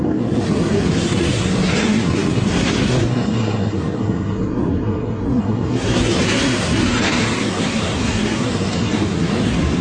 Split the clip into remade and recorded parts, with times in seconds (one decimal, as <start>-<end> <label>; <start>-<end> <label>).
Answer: 0.0-9.8 remade